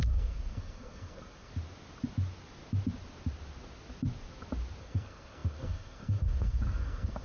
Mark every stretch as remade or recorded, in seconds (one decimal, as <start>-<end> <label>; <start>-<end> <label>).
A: 0.0-1.5 remade; 1.5-4.8 recorded; 4.8-7.2 remade